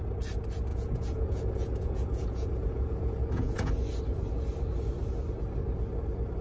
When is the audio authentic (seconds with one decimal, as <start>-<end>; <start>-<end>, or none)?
0.0-0.7; 3.7-6.4